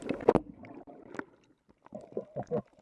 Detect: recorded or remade recorded